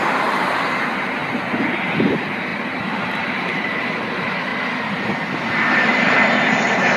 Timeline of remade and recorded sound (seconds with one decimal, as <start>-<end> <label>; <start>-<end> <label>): 0.0-1.2 remade; 1.2-2.1 recorded; 2.1-4.5 remade; 4.5-5.5 recorded; 5.5-7.0 remade

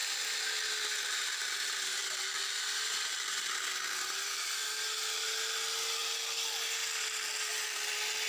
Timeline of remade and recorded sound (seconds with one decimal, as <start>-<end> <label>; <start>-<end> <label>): 0.0-2.0 recorded; 2.0-3.5 remade; 3.5-6.0 recorded; 6.0-7.9 remade; 7.9-8.3 recorded

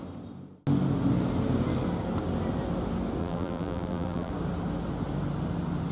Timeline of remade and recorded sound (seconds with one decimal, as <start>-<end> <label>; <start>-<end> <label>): 0.0-3.2 recorded; 3.2-4.3 remade; 4.3-5.9 recorded